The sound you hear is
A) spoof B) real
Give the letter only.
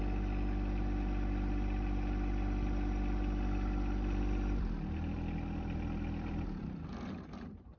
A